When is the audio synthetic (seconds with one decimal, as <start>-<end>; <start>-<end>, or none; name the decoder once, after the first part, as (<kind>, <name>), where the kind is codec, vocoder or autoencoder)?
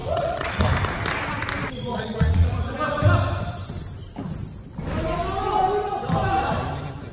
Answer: 0.0-0.6 (vocoder, Vocos); 1.9-2.5